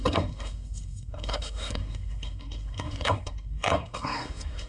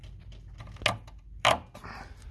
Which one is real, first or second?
second